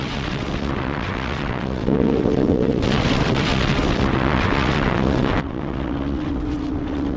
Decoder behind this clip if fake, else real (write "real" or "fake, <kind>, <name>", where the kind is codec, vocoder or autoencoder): fake, vocoder, WaveNeXt